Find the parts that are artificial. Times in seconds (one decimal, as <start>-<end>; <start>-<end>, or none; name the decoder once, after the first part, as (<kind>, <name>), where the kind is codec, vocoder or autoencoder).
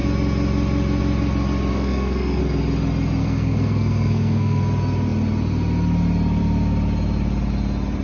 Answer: 1.7-2.4 (codec, SNAC); 3.2-4.6